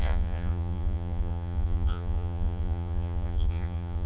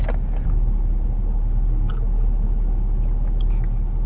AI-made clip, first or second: first